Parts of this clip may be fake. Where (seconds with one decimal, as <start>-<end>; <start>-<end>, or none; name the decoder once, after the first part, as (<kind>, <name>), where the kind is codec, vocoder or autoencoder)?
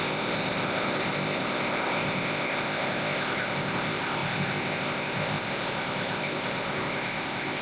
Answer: 0.0-7.6 (codec, ZipCodec)